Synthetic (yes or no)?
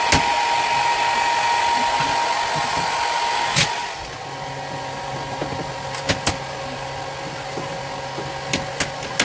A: no